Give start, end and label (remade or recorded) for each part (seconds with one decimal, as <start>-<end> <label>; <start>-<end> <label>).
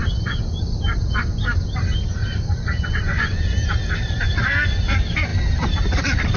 0.0-6.4 recorded